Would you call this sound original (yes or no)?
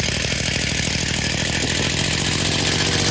yes